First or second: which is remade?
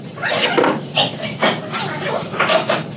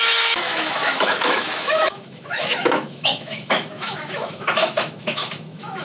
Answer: second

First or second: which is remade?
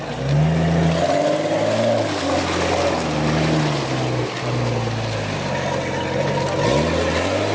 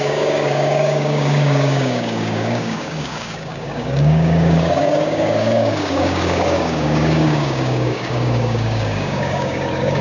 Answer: second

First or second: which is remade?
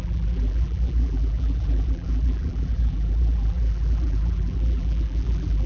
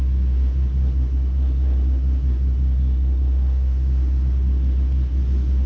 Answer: first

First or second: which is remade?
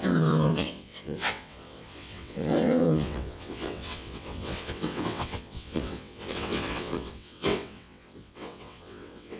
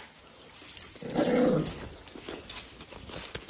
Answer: first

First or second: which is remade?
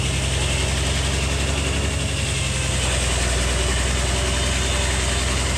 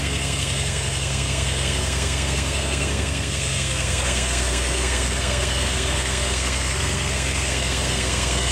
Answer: second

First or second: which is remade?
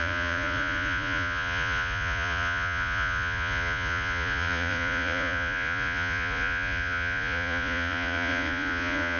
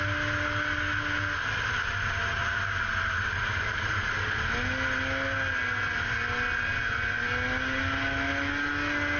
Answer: first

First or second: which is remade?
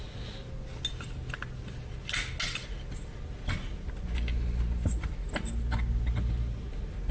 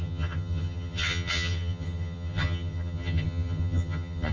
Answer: second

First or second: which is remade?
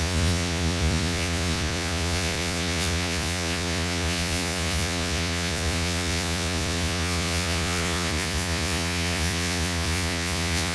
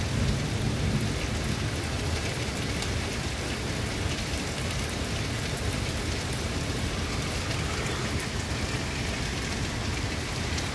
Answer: first